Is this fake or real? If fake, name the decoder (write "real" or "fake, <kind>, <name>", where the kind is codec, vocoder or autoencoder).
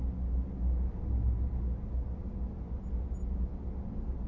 real